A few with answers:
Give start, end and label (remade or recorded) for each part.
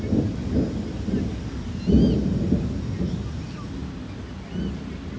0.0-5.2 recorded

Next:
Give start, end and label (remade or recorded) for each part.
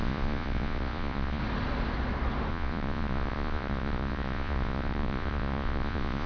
0.0-1.4 remade; 1.4-2.5 recorded; 2.5-6.3 remade